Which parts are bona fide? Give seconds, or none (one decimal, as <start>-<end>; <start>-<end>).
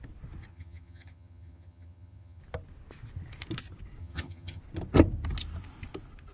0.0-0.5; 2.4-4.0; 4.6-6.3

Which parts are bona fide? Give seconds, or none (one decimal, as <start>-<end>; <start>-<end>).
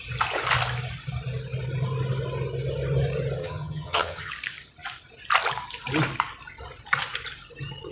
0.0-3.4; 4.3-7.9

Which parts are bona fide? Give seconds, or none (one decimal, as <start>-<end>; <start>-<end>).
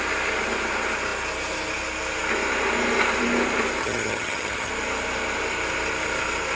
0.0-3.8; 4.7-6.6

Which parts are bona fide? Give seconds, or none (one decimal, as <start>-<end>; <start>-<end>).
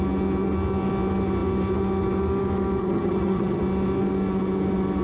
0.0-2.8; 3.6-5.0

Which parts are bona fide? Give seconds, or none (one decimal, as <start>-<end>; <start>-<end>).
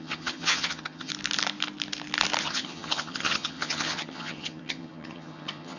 1.1-2.4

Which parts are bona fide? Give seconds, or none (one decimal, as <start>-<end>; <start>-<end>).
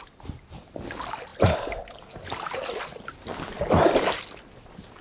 0.0-5.0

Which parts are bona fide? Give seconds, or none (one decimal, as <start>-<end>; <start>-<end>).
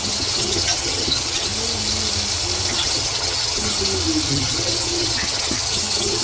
1.5-2.7; 3.8-4.3